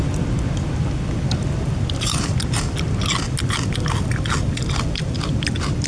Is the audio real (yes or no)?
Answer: yes